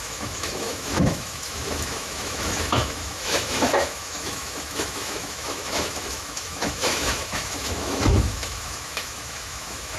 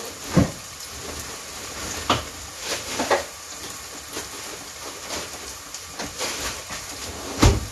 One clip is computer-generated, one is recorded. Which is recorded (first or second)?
second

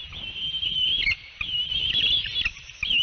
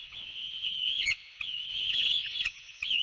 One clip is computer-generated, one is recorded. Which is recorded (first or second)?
first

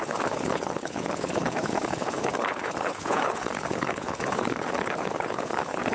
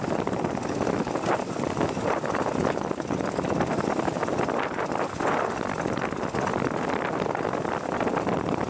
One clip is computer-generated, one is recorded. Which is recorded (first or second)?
second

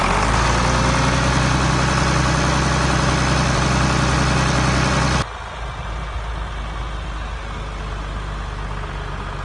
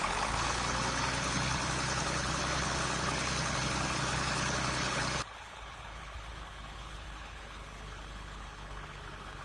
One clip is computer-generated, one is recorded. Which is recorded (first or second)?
first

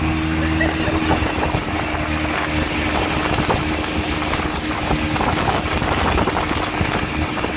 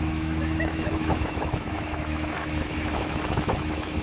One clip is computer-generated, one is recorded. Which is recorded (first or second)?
first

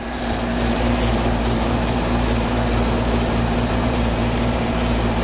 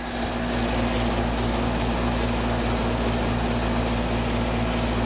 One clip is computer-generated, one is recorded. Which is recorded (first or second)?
second